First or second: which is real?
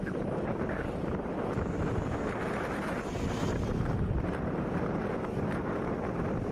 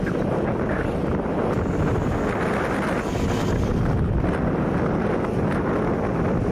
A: second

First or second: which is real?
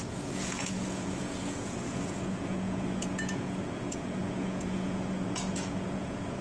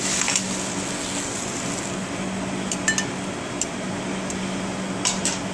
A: second